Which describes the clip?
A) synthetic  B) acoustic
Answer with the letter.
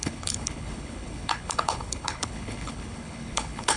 A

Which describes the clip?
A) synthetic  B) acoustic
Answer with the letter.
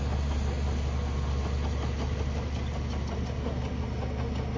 B